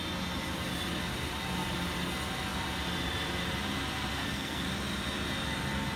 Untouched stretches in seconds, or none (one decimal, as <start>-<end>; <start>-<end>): 0.0-4.1; 4.7-6.0